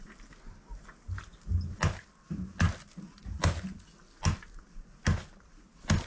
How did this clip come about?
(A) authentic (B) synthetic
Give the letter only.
A